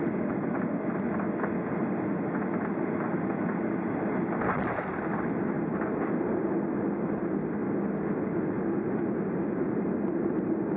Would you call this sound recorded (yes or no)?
yes